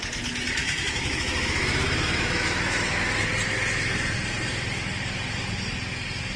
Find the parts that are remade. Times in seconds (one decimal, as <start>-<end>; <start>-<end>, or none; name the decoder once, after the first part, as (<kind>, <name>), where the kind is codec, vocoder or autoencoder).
0.6-3.3 (autoencoder, DAC-VAE)